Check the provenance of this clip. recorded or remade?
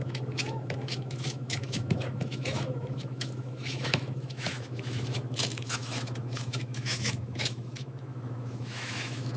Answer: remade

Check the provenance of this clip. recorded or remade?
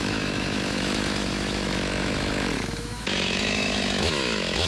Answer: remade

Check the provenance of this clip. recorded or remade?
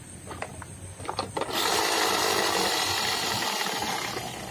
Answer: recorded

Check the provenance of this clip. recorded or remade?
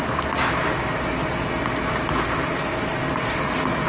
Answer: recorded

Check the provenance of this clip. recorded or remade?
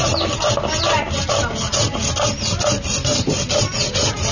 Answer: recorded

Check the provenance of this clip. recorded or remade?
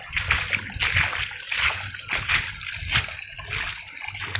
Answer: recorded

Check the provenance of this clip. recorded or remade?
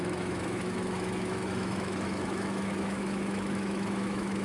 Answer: remade